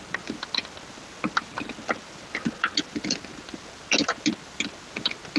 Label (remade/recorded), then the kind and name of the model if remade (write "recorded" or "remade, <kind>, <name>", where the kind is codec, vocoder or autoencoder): recorded